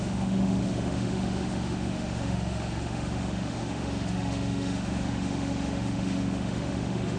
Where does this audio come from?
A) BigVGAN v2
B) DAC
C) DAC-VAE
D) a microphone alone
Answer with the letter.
C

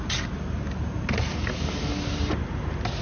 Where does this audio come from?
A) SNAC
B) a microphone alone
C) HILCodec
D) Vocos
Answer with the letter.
B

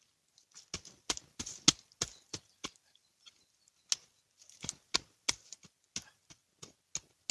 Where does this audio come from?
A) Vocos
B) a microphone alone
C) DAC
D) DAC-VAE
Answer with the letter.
B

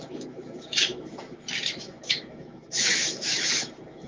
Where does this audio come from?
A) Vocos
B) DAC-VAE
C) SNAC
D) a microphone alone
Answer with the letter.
B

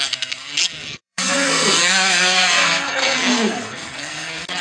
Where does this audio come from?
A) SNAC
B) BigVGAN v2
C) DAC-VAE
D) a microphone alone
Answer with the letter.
A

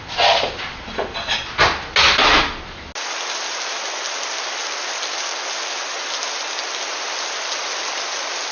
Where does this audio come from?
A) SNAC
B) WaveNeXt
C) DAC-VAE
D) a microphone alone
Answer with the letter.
D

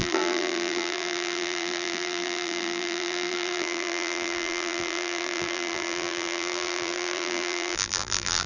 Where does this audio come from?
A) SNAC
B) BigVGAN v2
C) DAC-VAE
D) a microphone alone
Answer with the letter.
B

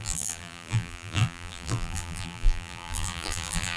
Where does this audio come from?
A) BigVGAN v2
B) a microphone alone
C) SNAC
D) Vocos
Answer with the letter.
A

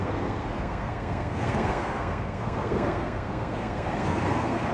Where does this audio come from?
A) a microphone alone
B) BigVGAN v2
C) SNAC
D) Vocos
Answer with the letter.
C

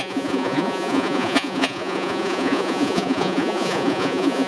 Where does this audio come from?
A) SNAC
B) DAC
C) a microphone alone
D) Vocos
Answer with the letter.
D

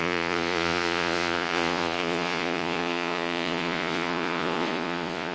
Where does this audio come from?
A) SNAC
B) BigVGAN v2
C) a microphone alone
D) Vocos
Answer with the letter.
D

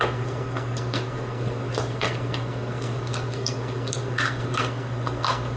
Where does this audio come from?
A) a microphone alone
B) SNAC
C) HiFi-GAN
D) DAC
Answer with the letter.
B